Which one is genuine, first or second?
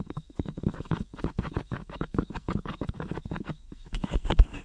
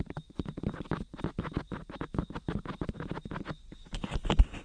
second